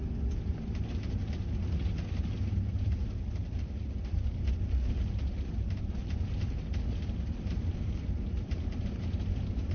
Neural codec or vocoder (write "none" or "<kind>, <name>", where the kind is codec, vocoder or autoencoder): vocoder, BigVGAN v2